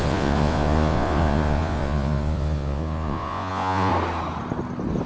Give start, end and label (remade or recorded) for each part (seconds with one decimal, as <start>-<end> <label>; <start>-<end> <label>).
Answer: 0.0-3.9 remade; 3.9-5.1 recorded